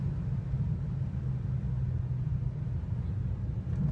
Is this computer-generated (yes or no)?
no